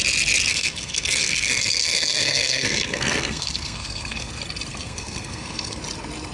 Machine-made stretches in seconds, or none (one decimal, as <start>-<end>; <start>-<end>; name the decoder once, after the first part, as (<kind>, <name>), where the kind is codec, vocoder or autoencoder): 0.5-4.3 (codec, SNAC); 4.7-5.8